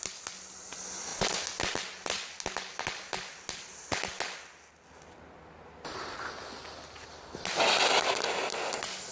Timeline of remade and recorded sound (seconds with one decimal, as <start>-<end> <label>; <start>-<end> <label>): 0.0-9.1 recorded